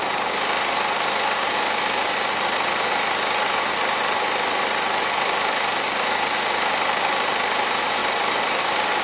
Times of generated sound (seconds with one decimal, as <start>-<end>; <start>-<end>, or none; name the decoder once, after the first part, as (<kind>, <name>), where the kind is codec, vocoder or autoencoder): 8.0-8.6 (vocoder, BigVGAN v2)